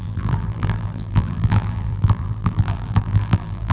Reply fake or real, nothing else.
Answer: fake